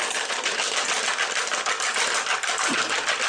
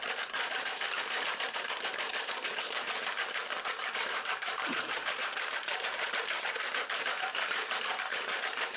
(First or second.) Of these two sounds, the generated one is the second